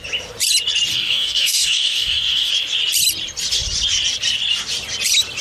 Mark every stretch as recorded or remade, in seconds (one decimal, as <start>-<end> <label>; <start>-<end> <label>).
0.0-0.9 recorded; 0.9-2.5 remade; 2.5-5.4 recorded